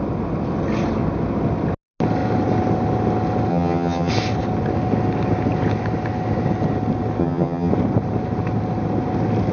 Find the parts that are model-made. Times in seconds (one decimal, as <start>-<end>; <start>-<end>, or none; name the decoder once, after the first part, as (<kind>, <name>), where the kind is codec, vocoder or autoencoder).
3.5-4.1 (vocoder, HiFi-GAN); 7.2-7.7